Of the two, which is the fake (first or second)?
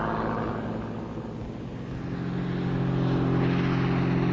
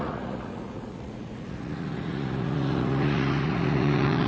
second